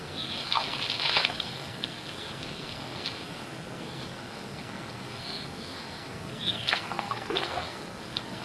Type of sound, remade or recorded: remade